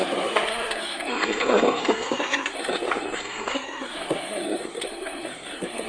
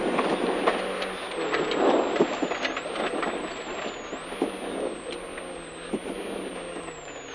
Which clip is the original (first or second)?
second